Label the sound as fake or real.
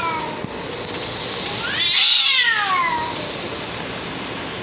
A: real